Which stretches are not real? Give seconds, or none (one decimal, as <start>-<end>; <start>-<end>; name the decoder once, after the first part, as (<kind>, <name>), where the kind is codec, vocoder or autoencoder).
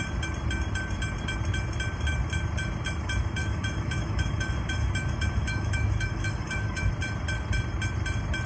3.4-6.9 (autoencoder, DAC-VAE)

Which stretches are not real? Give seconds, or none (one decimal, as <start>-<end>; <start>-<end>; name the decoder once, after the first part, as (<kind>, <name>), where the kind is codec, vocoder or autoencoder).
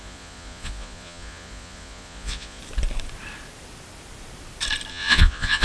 0.0-2.6 (vocoder, Vocos); 4.9-5.6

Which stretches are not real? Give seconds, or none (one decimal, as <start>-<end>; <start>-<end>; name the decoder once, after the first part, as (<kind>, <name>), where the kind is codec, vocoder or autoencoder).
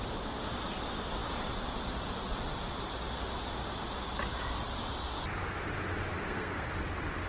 6.1-6.7 (codec, SNAC)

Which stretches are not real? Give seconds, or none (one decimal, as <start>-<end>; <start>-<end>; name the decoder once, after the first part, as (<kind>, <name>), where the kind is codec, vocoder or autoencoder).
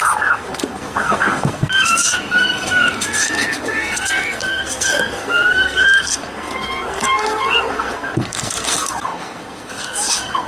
0.0-10.5 (codec, SNAC)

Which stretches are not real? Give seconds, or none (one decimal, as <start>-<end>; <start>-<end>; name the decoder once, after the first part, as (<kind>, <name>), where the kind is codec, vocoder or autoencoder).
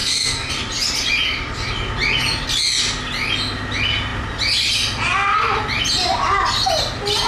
0.0-0.5 (codec, SNAC)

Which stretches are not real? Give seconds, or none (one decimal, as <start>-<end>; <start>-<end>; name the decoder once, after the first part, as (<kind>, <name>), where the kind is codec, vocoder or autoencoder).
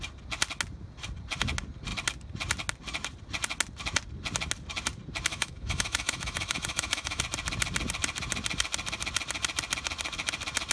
5.3-7.2 (autoencoder, DAC-VAE)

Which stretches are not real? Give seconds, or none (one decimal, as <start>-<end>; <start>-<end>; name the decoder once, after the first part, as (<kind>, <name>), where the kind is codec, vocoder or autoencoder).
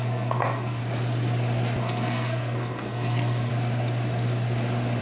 0.0-0.8 (codec, SNAC); 1.8-3.5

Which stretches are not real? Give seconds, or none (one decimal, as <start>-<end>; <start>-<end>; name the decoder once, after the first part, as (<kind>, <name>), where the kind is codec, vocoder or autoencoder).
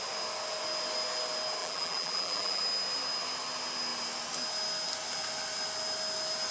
1.6-2.6 (vocoder, BigVGAN v2)